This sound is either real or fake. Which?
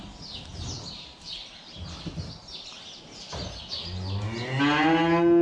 real